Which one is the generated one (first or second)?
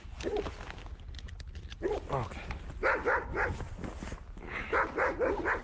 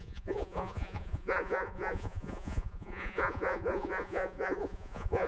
second